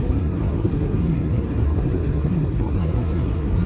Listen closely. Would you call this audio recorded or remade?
remade